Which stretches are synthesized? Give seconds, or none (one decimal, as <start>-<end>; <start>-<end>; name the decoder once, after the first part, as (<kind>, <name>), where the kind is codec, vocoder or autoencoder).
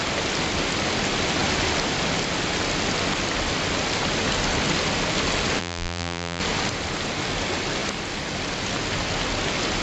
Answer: 5.6-6.4 (vocoder, BigVGAN v2)